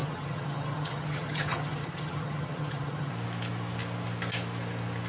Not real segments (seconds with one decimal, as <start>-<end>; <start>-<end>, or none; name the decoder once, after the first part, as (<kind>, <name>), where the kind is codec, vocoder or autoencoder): 0.0-3.1 (vocoder, HiFi-GAN)